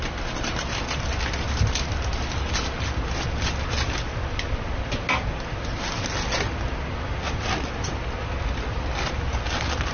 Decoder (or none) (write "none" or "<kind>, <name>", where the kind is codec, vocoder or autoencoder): none